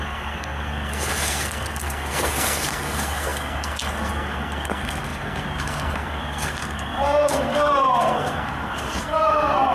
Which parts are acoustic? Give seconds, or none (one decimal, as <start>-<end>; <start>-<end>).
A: none